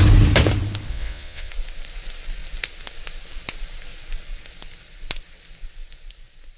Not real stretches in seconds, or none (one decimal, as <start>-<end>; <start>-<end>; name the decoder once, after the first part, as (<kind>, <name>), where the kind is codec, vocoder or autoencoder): 0.9-1.5 (vocoder, Vocos)